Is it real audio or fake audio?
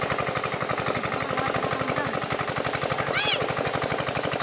real